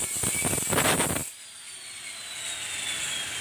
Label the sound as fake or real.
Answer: real